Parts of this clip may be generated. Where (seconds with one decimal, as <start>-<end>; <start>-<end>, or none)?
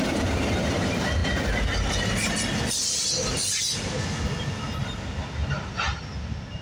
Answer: none